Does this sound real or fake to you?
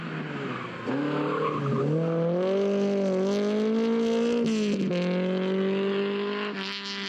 real